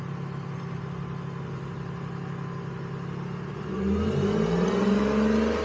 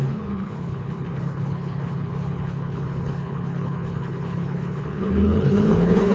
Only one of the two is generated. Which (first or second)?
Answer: second